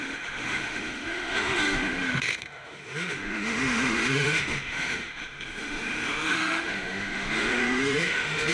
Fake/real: fake